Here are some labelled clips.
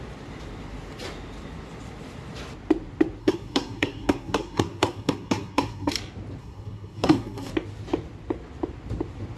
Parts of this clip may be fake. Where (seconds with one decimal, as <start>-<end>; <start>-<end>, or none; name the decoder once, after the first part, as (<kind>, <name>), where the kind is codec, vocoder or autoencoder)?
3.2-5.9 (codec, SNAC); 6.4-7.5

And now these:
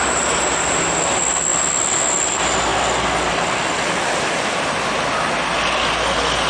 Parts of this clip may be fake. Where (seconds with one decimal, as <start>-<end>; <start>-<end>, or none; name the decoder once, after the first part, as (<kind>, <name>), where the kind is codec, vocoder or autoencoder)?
none

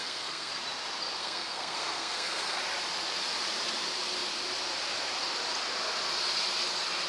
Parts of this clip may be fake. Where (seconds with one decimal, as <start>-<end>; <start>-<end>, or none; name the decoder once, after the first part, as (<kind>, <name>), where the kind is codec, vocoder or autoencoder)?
0.0-0.5 (codec, SNAC); 1.2-2.6